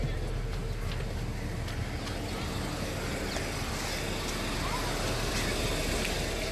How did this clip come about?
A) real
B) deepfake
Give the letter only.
A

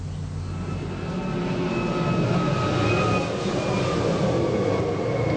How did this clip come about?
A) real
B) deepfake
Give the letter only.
A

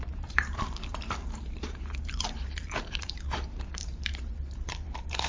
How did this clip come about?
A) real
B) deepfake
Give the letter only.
B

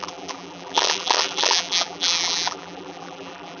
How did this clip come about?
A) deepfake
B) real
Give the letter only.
A